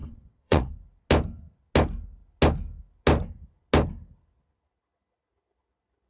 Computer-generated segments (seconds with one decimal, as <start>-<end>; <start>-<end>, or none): 0.0-0.7